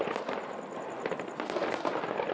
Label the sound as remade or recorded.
recorded